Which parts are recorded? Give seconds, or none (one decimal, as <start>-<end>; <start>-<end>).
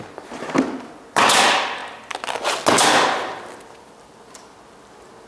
0.0-5.3